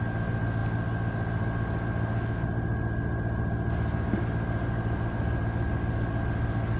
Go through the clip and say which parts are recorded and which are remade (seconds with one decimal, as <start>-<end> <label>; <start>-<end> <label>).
0.0-6.8 recorded